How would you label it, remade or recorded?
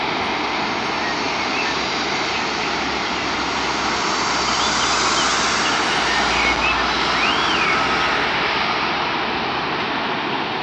recorded